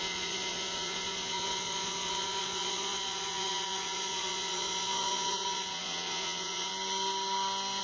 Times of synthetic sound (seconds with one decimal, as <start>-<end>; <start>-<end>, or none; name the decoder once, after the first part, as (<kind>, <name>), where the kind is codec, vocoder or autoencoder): 0.0-6.7 (vocoder, Vocos)